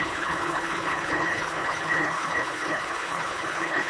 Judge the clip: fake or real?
fake